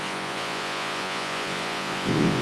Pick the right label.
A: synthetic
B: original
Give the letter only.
A